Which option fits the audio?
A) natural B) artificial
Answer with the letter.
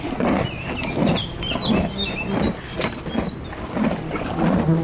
A